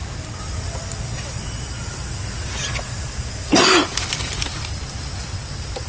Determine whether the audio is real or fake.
real